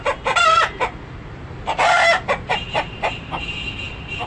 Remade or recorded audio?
remade